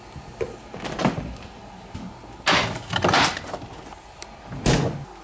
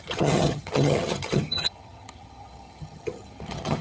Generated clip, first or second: second